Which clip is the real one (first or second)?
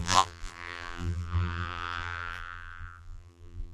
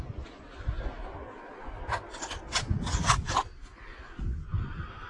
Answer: second